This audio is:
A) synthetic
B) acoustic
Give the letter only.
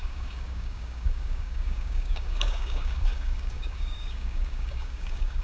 A